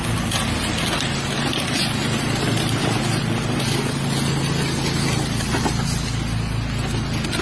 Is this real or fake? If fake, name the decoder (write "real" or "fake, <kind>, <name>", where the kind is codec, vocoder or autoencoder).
real